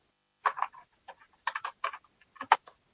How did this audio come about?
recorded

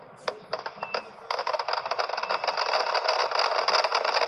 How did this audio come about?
recorded